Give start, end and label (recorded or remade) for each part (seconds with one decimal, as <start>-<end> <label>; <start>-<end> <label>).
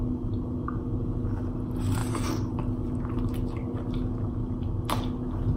0.0-5.6 recorded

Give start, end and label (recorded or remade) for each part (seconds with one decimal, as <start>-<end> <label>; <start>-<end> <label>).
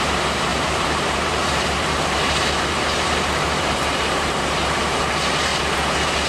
0.0-5.5 remade; 5.5-6.3 recorded